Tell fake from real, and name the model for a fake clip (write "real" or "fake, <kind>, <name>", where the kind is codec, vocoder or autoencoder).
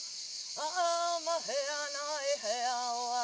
real